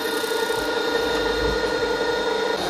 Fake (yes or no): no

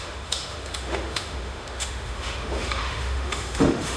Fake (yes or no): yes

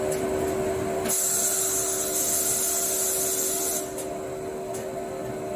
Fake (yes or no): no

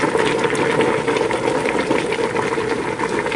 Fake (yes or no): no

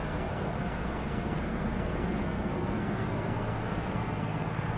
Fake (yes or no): yes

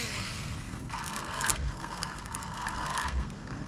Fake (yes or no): yes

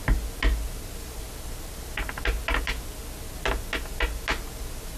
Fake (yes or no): no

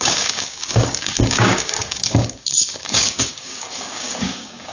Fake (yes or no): yes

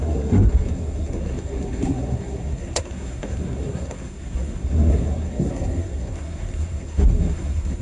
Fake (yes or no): yes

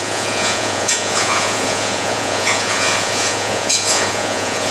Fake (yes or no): yes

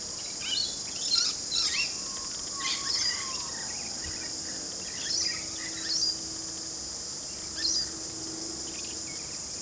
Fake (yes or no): no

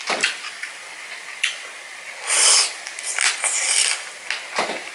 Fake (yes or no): no